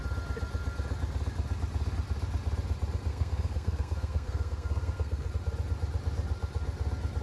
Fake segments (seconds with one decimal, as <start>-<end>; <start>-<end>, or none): 3.1-5.3